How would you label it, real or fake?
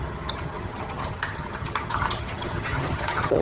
fake